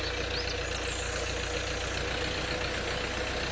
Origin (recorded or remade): recorded